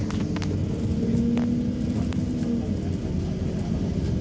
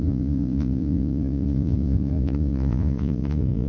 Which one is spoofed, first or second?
second